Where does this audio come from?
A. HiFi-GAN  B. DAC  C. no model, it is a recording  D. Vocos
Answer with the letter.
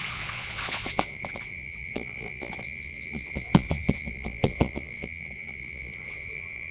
D